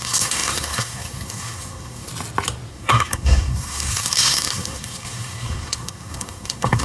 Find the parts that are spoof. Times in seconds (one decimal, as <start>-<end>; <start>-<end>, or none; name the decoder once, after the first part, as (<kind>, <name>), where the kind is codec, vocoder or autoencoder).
0.0-2.1 (codec, SNAC); 2.7-6.8